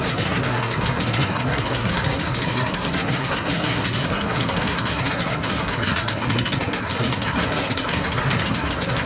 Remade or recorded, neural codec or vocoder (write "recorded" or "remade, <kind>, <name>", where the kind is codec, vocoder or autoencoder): remade, codec, SNAC